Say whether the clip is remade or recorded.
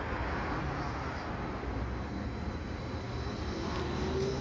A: recorded